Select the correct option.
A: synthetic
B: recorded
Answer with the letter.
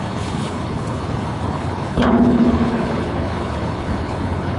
A